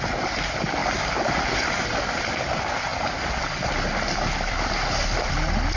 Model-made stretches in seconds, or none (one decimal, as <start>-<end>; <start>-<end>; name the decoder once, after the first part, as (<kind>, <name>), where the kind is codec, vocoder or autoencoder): 0.8-2.4 (vocoder, BigVGAN v2); 2.9-5.3